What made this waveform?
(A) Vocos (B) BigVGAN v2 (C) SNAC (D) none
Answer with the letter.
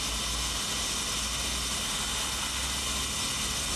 D